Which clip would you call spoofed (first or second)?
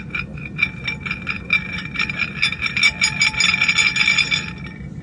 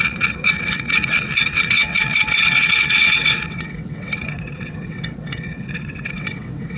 second